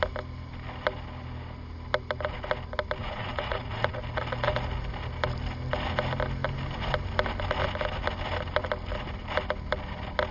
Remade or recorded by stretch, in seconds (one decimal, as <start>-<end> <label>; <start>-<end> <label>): 0.0-3.0 recorded; 3.0-4.0 remade; 4.0-10.3 recorded